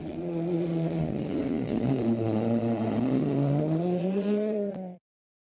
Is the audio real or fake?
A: fake